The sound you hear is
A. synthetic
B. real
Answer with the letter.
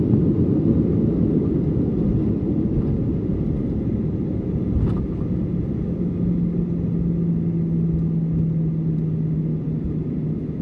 B